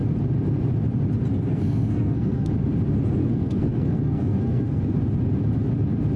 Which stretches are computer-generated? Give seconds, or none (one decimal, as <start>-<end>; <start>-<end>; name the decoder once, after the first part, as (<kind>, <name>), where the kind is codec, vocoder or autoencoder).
1.5-2.5 (codec, SNAC); 3.2-4.8